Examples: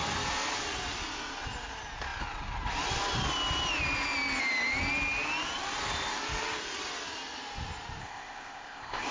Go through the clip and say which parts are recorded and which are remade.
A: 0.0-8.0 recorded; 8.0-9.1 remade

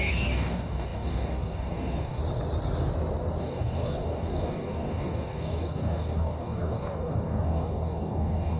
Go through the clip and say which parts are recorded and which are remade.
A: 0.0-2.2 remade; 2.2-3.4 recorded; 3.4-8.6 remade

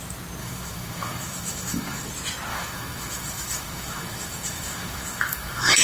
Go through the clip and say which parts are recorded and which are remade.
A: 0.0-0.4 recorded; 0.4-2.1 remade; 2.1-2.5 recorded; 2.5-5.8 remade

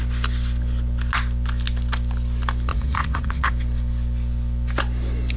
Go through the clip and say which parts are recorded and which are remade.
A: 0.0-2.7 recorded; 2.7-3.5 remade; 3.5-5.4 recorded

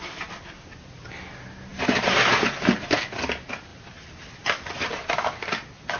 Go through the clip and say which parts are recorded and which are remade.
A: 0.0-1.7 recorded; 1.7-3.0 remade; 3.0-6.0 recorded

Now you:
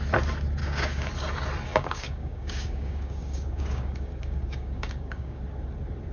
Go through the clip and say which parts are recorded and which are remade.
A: 0.0-0.6 recorded; 0.6-1.1 remade; 1.1-1.7 recorded; 1.7-5.4 remade; 5.4-6.1 recorded

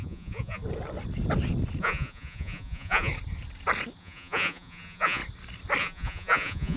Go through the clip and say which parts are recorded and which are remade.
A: 0.0-0.6 remade; 0.6-1.8 recorded; 1.8-3.1 remade; 3.1-4.0 recorded; 4.0-5.2 remade; 5.2-5.8 recorded; 5.8-6.8 remade